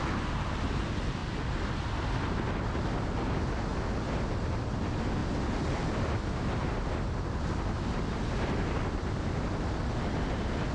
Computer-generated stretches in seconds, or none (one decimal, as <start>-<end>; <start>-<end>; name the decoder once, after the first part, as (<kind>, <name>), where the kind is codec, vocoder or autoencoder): none